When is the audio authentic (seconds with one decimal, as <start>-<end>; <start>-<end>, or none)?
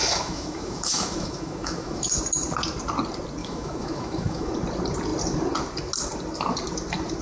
2.1-3.4; 4.5-7.2